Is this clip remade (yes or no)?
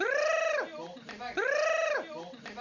no